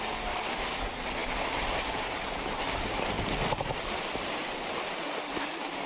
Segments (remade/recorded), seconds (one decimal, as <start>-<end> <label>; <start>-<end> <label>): 0.0-5.9 recorded